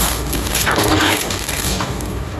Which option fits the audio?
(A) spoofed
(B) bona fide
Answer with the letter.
A